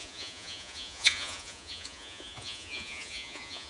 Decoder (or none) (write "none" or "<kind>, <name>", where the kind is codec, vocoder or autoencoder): vocoder, Vocos